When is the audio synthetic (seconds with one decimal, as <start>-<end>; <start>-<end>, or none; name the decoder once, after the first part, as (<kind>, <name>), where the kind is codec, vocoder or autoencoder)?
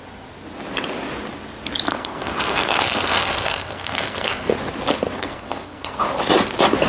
1.9-4.5 (codec, SNAC); 5.2-6.0